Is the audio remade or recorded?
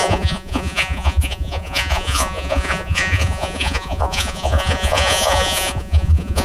remade